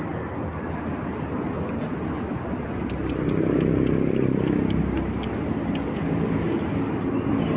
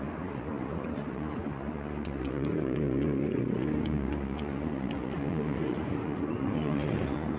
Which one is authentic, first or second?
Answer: first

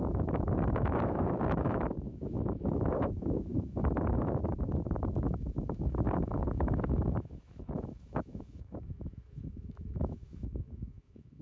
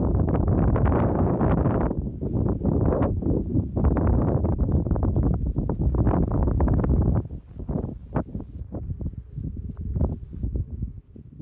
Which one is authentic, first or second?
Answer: second